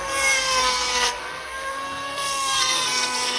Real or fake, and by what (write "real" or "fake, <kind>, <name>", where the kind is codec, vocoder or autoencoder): fake, codec, SNAC